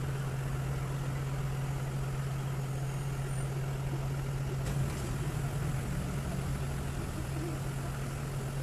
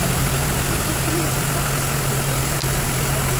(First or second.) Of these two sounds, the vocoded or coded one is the second